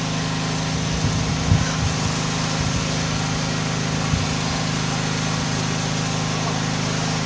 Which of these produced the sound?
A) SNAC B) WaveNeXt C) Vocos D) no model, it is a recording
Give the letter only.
D